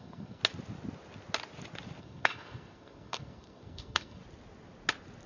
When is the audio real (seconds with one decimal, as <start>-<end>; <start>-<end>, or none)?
0.4-2.0; 4.2-5.3